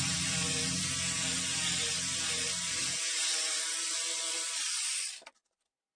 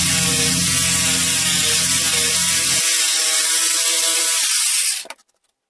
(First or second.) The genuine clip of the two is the second